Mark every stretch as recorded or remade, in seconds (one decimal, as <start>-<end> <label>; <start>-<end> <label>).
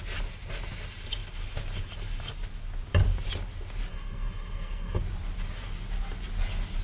0.0-3.9 recorded; 3.9-5.0 remade; 5.0-6.8 recorded